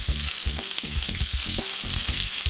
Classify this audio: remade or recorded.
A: remade